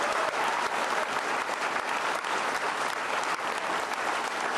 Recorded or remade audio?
remade